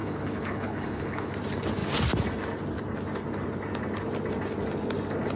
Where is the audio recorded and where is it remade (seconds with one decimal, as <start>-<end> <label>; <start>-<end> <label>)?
0.0-1.3 remade; 1.3-5.4 recorded